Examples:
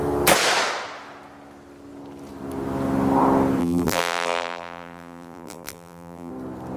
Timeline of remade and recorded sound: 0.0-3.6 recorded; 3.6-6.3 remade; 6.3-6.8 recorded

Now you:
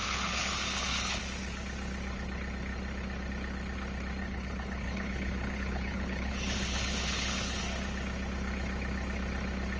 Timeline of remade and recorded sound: 0.0-1.2 remade; 1.2-4.2 recorded; 4.2-7.6 remade; 7.6-9.8 recorded

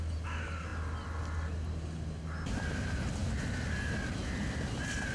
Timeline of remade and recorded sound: 0.0-5.1 recorded

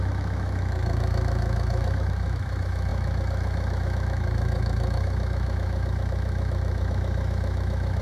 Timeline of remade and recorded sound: 0.0-8.0 remade